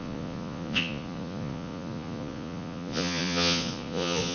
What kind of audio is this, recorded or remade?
remade